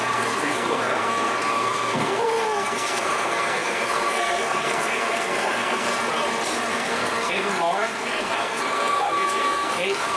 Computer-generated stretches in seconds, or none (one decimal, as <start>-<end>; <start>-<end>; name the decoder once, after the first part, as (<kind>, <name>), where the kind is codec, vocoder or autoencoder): 0.0-5.9 (codec, SNAC); 6.7-10.2